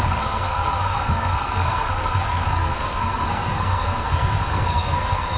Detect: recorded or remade remade